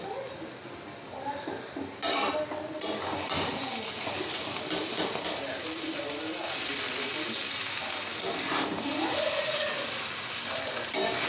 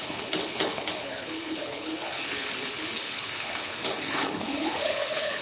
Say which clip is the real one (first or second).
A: first